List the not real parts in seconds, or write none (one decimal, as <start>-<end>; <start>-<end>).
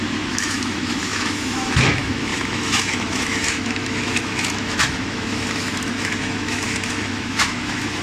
0.0-8.0